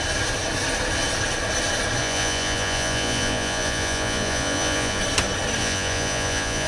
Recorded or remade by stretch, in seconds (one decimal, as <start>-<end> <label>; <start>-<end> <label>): 0.0-2.0 recorded; 2.0-5.0 remade; 5.0-5.6 recorded; 5.6-6.7 remade